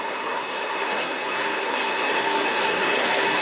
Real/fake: fake